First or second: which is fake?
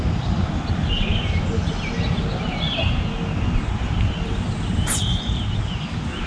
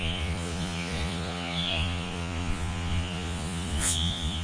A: second